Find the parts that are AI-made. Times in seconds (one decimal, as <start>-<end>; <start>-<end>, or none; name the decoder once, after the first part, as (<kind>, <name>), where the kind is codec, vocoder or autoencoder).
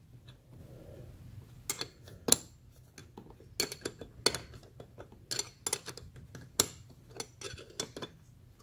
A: none